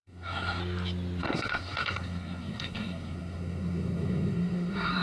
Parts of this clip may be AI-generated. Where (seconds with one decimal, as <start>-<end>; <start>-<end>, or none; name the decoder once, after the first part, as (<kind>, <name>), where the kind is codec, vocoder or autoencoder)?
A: 0.0-0.6 (codec, SNAC); 1.2-5.0

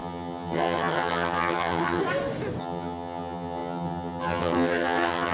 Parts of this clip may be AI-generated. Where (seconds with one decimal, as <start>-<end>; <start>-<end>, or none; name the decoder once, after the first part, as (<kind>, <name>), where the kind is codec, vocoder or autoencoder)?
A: 0.0-2.0 (vocoder, HiFi-GAN); 2.6-5.3

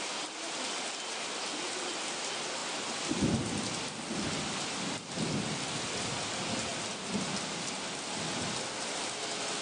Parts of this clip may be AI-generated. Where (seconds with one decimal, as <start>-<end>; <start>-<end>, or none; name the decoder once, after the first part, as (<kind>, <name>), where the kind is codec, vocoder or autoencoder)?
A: none